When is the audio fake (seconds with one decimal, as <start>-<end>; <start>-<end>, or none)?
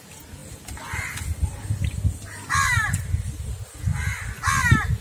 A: none